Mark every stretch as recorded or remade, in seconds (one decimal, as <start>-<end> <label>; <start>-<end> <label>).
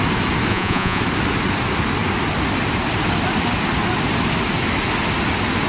0.0-0.5 recorded; 0.5-1.0 remade; 1.0-5.7 recorded